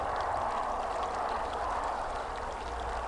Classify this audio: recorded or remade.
recorded